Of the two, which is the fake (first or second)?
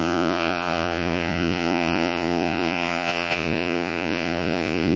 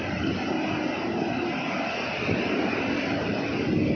first